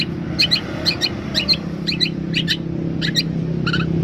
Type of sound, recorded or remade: recorded